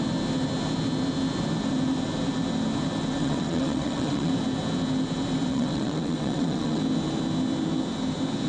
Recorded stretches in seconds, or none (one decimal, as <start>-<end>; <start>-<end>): 0.0-3.2; 4.3-5.5; 6.8-8.5

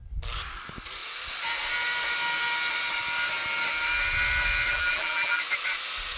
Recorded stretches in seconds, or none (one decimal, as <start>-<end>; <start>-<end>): 0.0-4.7; 5.4-6.2

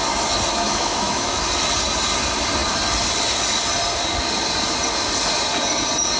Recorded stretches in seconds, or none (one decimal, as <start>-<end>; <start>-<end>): 0.0-0.5; 1.4-6.2

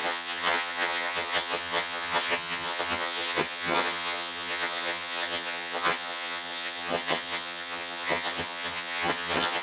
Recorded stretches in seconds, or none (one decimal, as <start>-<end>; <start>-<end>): none